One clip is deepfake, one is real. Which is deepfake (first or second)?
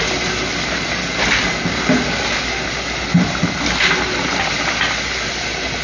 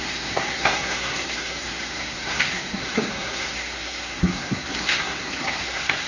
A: second